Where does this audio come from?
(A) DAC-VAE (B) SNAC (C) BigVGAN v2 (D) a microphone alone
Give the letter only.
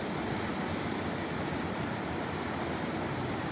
D